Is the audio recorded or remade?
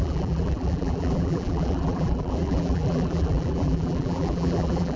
remade